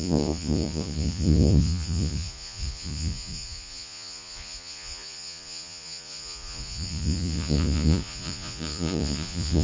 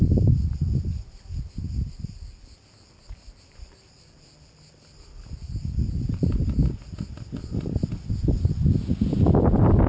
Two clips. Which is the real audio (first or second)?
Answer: second